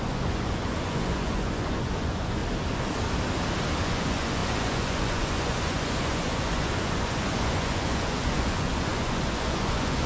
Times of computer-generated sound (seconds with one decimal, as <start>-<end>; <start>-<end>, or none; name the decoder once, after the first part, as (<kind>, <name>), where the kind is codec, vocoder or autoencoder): 0.0-2.4 (vocoder, Vocos); 3.8-10.1